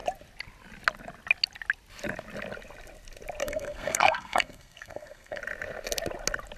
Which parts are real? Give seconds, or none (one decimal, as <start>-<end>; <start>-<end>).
0.0-3.4; 5.4-6.6